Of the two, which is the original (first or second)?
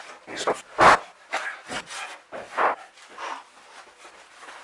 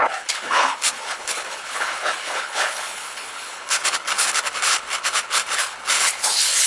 first